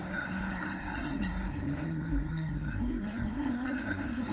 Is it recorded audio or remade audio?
remade